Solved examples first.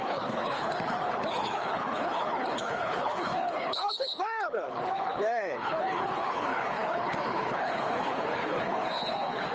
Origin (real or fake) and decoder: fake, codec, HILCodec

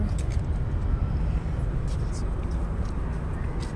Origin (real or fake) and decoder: real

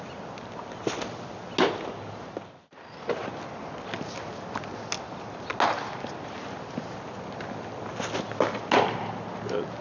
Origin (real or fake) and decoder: real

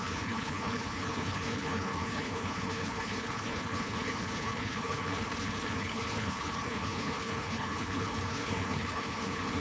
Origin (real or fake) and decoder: fake, codec, HILCodec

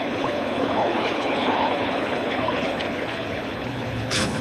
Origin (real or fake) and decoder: fake, codec, HILCodec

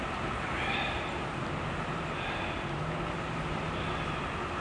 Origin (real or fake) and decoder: real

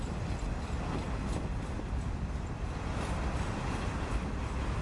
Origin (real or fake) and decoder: real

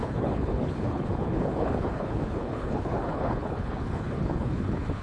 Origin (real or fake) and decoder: fake, codec, HILCodec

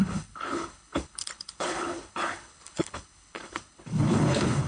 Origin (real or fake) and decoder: fake, codec, HILCodec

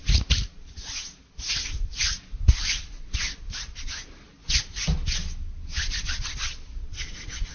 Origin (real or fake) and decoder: real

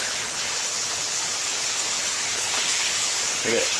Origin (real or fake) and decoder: fake, codec, HILCodec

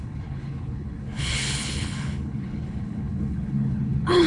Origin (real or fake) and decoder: fake, codec, HILCodec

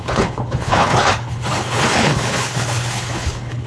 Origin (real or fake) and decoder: fake, codec, HILCodec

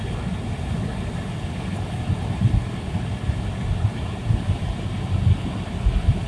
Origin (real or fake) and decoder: real